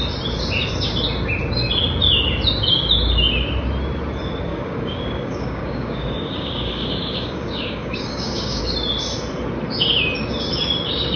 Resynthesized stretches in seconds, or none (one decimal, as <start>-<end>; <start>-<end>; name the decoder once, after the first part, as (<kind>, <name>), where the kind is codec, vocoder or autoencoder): 4.5-8.6 (codec, DAC)